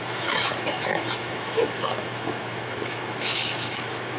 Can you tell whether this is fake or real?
fake